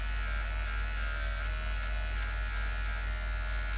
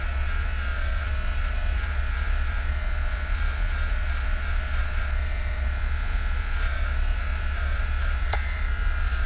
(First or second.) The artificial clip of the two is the second